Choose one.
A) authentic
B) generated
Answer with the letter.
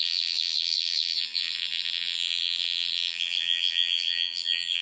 B